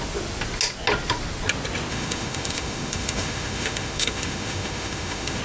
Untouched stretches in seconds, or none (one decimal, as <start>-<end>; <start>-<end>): 0.0-1.9